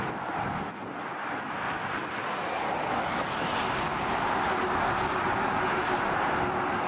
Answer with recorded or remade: recorded